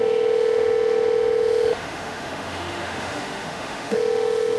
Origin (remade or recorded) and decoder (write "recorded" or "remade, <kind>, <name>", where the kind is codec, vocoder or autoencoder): remade, autoencoder, DAC-VAE